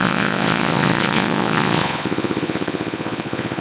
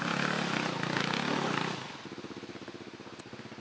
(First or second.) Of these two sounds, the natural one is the second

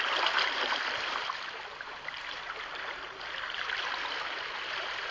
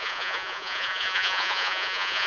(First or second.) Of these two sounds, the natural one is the first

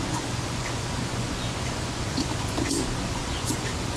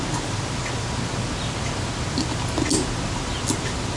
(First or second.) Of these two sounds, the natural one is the second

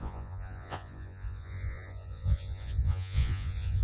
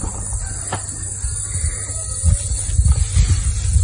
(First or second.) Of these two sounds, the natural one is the second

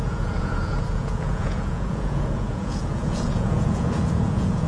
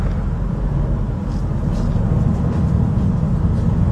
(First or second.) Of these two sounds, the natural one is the second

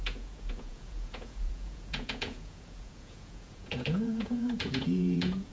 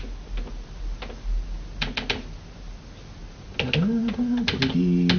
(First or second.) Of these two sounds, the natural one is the second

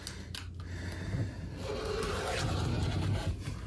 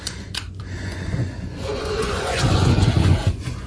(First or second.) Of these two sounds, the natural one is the first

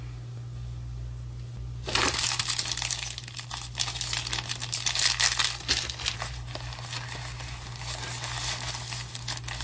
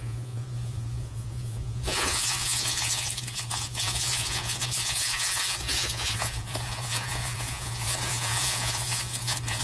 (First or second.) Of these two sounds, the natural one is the first